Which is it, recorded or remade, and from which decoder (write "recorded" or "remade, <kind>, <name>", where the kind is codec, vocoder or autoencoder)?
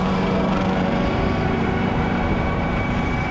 remade, vocoder, BigVGAN v2